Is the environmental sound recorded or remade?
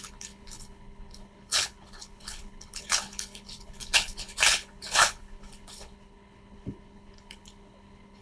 remade